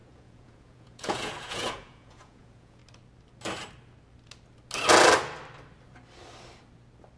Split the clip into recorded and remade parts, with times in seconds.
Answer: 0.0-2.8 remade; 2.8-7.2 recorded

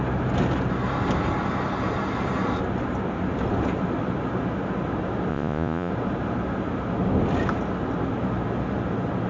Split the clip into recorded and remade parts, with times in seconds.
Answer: 0.0-5.3 recorded; 5.3-5.9 remade; 5.9-9.3 recorded

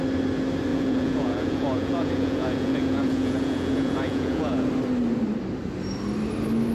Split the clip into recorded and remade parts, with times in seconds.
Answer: 0.0-0.7 recorded; 0.7-4.7 remade; 4.7-6.7 recorded

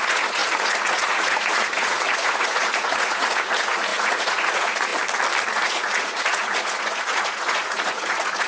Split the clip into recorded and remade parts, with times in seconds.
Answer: 0.0-4.9 remade; 4.9-5.5 recorded; 5.5-8.5 remade

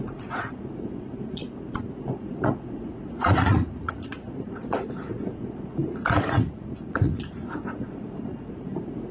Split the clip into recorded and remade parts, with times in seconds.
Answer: 0.0-1.4 remade; 1.4-2.0 recorded; 2.0-9.1 remade

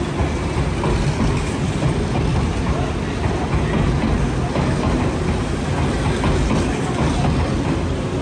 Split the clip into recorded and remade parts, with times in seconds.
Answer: 0.0-8.2 recorded

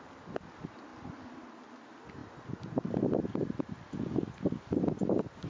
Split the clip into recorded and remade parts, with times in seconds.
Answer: 0.0-5.5 recorded